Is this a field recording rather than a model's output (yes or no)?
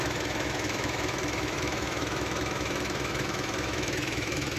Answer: no